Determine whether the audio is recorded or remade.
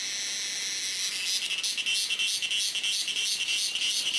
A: recorded